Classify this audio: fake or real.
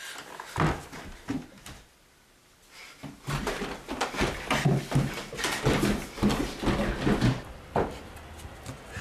real